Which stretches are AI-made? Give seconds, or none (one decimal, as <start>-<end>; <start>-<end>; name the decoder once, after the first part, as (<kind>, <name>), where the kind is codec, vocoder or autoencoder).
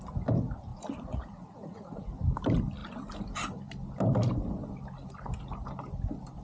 0.7-2.1 (vocoder, Vocos)